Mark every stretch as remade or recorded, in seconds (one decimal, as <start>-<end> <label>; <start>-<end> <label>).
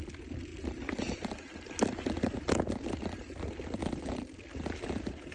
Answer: 0.0-3.8 recorded; 3.8-5.3 remade